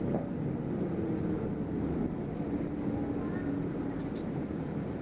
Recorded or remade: recorded